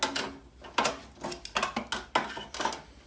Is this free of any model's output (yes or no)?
yes